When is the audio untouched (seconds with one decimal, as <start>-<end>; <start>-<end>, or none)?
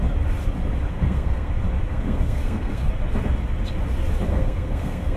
0.0-0.9; 1.5-1.9; 2.9-4.3